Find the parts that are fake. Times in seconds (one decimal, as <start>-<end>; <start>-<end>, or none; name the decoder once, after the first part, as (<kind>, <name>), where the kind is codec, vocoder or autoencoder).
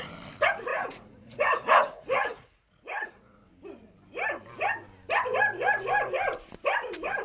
0.7-3.5 (vocoder, Vocos)